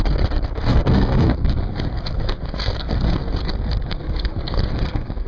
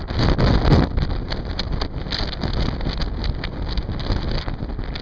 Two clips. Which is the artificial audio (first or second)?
first